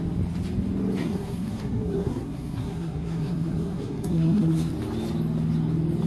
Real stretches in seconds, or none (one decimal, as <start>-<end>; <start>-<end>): 0.0-1.0; 4.7-6.1